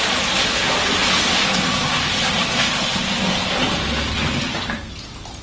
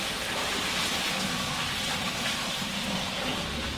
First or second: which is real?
first